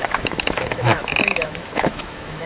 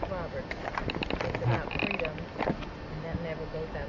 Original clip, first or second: second